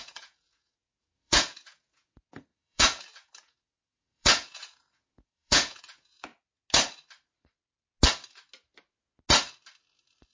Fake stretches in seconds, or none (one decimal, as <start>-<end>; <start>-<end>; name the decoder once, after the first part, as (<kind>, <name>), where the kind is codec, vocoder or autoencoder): 0.0-6.3 (vocoder, Vocos)